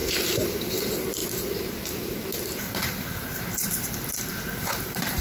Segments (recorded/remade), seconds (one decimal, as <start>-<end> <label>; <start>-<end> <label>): 0.0-5.2 remade